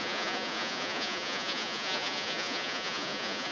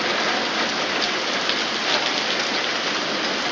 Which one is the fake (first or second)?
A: first